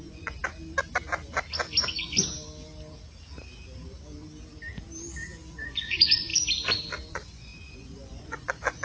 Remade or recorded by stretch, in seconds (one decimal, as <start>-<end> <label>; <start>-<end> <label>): 0.0-0.4 remade; 0.4-5.5 recorded; 5.5-6.3 remade; 6.3-7.1 recorded; 7.1-8.8 remade

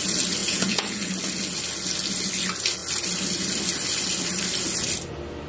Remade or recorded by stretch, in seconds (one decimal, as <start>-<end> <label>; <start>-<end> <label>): 0.0-0.4 recorded; 0.4-1.1 remade; 1.1-5.5 recorded

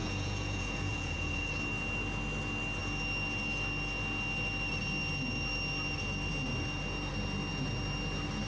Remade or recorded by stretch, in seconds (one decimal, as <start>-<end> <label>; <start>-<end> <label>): 0.0-1.5 remade; 1.5-8.5 recorded

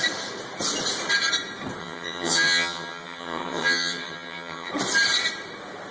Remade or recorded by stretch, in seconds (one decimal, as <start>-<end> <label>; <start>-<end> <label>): 0.0-1.8 recorded; 1.8-4.7 remade; 4.7-5.9 recorded